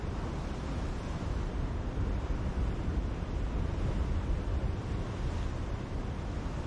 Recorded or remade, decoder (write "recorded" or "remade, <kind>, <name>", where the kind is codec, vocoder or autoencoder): recorded